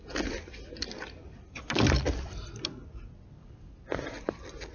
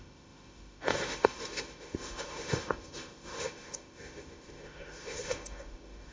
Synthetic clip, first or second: second